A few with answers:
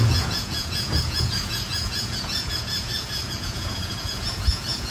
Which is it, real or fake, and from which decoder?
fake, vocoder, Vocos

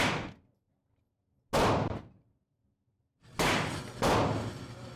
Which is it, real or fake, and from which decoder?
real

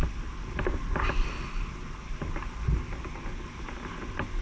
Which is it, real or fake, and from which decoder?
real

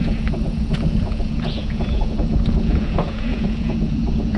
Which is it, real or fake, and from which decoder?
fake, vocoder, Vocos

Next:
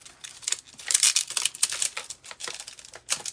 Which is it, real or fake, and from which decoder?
real